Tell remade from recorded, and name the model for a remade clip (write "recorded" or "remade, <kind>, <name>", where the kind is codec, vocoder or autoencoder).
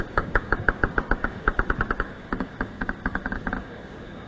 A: remade, codec, DAC